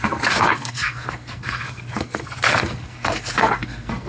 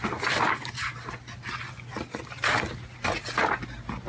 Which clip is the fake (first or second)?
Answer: first